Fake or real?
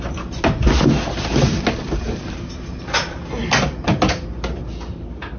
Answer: real